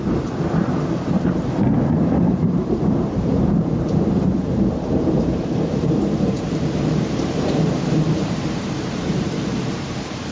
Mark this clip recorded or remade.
remade